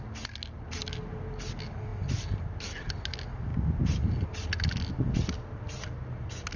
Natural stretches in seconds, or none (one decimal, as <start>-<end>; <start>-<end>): 0.0-6.6